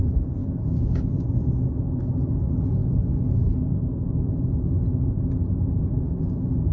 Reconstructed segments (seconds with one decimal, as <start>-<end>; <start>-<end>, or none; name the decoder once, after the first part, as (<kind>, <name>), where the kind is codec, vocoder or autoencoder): none